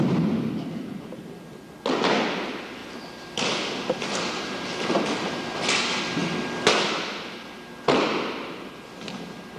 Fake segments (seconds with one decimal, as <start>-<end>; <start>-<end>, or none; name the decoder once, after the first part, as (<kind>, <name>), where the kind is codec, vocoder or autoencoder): 2.8-4.9 (vocoder, BigVGAN v2)